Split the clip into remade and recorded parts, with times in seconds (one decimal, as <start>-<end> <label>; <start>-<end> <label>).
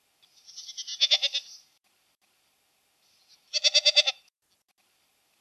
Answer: 0.0-5.4 recorded